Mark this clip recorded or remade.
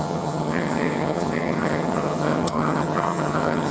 remade